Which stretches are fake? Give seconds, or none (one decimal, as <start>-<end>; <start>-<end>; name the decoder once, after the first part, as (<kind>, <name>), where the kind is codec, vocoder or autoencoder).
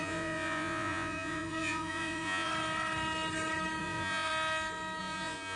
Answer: 0.0-2.5 (vocoder, Vocos); 3.8-4.3; 5.0-5.6